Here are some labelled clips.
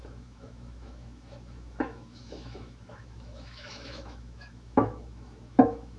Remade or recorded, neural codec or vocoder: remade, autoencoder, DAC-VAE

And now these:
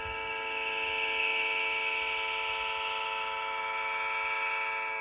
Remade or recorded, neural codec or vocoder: recorded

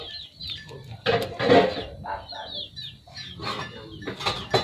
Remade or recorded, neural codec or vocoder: recorded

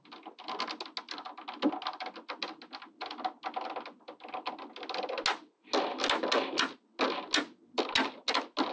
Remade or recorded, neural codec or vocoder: recorded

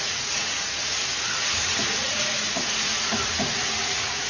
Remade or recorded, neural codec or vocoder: remade, vocoder, Vocos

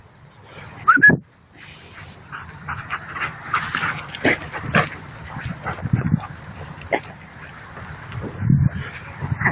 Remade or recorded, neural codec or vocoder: recorded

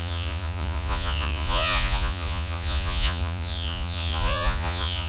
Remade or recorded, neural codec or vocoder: remade, vocoder, Vocos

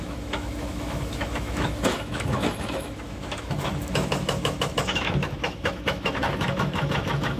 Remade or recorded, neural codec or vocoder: remade, autoencoder, DAC-VAE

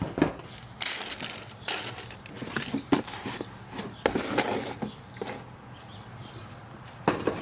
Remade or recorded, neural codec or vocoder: recorded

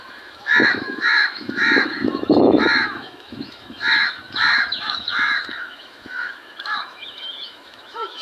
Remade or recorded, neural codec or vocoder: remade, autoencoder, DAC-VAE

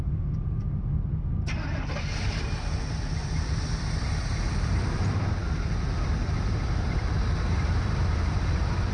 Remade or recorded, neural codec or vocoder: remade, vocoder, BigVGAN v2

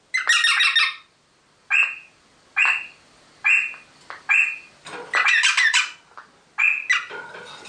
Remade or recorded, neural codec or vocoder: recorded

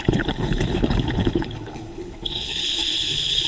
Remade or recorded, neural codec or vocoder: remade, codec, HILCodec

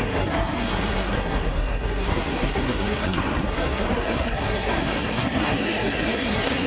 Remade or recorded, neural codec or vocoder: remade, codec, SNAC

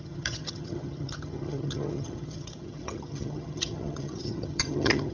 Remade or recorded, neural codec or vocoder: remade, vocoder, HiFi-GAN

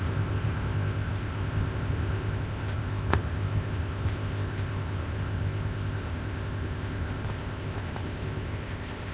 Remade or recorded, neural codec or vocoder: remade, codec, ZipCodec